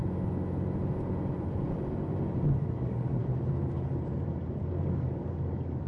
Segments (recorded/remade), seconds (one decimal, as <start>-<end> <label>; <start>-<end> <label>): 0.0-2.7 recorded; 2.7-3.2 remade; 3.2-4.5 recorded; 4.5-5.9 remade